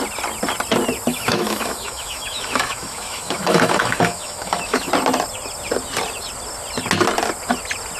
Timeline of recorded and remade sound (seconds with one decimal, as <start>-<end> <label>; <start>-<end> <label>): 0.0-1.1 recorded; 1.1-4.9 remade; 4.9-8.0 recorded